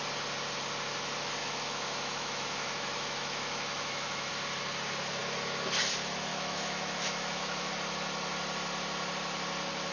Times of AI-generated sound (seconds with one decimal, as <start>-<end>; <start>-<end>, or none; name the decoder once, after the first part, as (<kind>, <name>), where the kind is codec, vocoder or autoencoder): 1.4-4.3 (autoencoder, DAC-VAE); 6.3-7.7